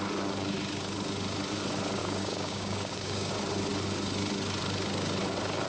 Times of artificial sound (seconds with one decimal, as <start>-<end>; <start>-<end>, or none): 2.0-3.3